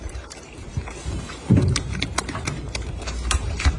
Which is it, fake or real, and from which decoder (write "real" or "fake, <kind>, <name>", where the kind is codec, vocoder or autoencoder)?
fake, vocoder, BigVGAN v2